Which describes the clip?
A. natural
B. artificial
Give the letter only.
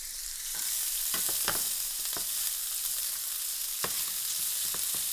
A